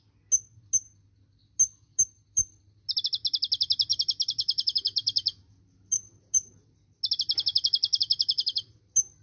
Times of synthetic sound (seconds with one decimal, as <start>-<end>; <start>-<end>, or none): none